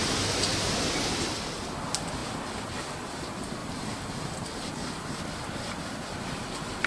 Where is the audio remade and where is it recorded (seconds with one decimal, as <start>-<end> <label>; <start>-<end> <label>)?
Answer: 0.0-0.5 remade; 0.5-3.6 recorded; 3.6-5.2 remade; 5.2-6.9 recorded